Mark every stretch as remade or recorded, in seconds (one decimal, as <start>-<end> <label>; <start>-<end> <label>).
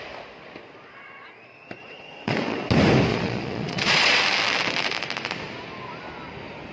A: 0.0-1.8 recorded; 1.8-2.7 remade; 2.7-3.1 recorded; 3.1-4.2 remade; 4.2-6.7 recorded